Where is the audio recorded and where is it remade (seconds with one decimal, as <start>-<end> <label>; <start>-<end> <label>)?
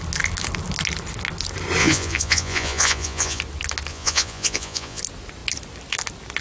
0.0-1.8 recorded; 1.8-3.4 remade; 3.4-3.9 recorded; 3.9-5.0 remade; 5.0-6.4 recorded